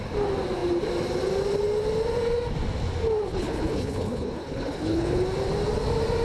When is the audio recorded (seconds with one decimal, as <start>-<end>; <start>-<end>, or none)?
0.0-3.3; 5.2-6.2